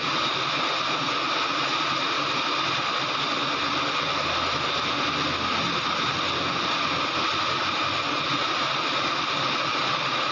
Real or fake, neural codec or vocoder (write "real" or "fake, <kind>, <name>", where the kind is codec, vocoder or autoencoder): real